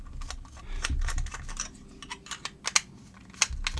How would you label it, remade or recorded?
recorded